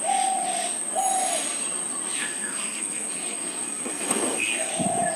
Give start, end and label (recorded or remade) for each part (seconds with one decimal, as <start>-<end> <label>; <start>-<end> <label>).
0.0-2.2 recorded; 2.2-4.7 remade; 4.7-5.2 recorded

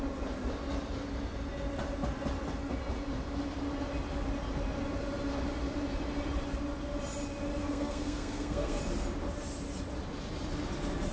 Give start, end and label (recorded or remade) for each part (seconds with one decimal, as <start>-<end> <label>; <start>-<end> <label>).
0.0-7.6 recorded; 7.6-8.8 remade; 8.8-11.1 recorded